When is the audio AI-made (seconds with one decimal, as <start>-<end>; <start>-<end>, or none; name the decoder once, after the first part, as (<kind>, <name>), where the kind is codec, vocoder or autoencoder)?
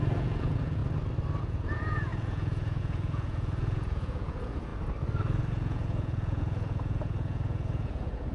0.0-0.8 (vocoder, Vocos); 1.4-4.7; 5.4-8.3